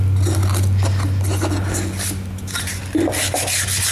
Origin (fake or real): real